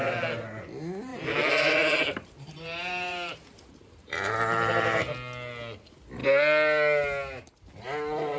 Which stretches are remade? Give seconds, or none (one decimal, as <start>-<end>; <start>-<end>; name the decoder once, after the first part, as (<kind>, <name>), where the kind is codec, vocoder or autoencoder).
1.1-5.0 (vocoder, BigVGAN v2)